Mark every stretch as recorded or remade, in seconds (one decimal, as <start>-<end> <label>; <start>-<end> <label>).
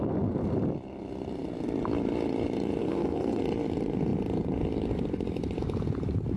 0.0-2.8 recorded; 2.8-3.4 remade; 3.4-6.4 recorded